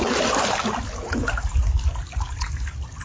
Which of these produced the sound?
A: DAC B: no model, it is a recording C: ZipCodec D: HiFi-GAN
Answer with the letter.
B